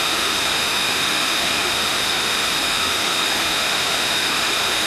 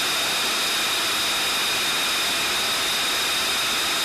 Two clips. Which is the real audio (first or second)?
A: second